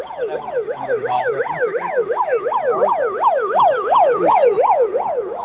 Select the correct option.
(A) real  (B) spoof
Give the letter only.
B